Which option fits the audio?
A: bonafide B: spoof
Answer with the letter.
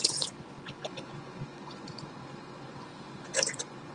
B